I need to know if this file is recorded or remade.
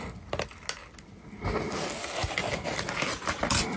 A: recorded